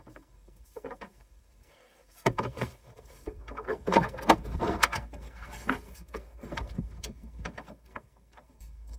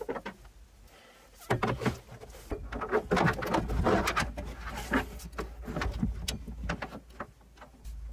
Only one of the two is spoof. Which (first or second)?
first